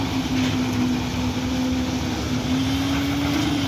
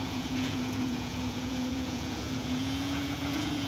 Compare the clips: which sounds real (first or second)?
first